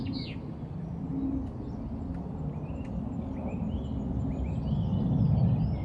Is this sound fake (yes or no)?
no